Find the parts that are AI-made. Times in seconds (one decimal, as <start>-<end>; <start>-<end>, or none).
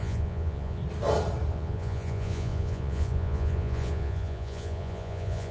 0.0-0.8; 1.5-5.5